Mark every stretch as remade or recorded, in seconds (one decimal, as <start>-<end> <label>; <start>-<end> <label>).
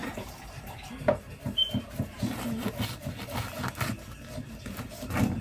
0.0-0.9 remade; 0.9-1.6 recorded; 1.6-2.2 remade; 2.2-5.4 recorded